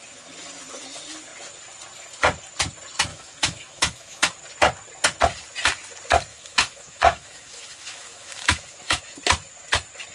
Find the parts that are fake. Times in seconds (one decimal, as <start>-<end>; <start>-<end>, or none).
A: 3.1-4.3; 6.3-9.0

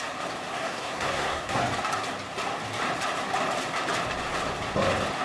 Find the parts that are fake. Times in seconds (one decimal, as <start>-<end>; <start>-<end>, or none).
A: 0.6-1.6

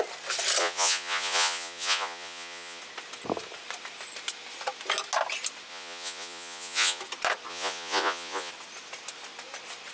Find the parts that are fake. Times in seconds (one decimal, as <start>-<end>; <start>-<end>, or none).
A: 0.6-2.8; 5.7-7.0; 7.5-8.5

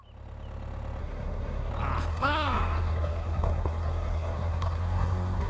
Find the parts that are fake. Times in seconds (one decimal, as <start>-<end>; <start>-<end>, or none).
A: 1.0-1.7; 2.1-5.5

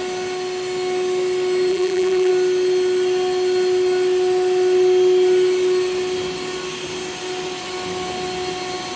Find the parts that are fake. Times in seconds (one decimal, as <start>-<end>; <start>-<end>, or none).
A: 1.7-2.3